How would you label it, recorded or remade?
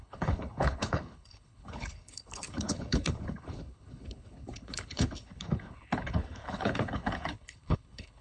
remade